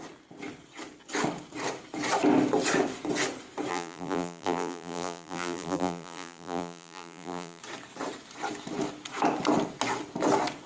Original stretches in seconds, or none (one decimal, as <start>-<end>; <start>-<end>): 0.0-3.7; 7.6-10.7